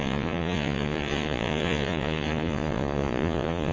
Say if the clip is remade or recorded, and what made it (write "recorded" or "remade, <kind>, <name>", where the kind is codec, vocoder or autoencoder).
remade, vocoder, Vocos